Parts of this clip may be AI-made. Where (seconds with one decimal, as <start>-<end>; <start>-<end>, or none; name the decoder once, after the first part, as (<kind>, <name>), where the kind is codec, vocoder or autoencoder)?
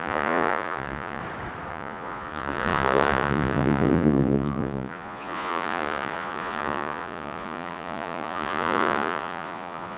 0.0-1.2 (vocoder, Vocos); 1.7-10.0